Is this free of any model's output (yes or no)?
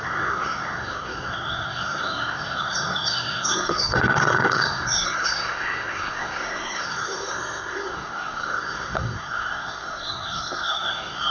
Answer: no